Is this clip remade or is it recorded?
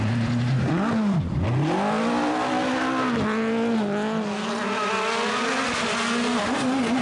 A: recorded